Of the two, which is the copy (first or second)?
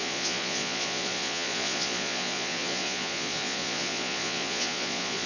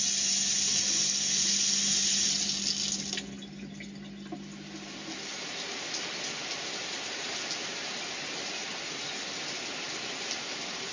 first